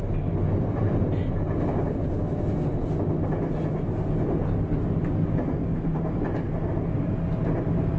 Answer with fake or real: real